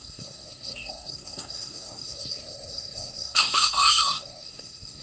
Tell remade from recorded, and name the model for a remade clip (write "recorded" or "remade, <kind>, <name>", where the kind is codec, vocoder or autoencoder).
remade, codec, SNAC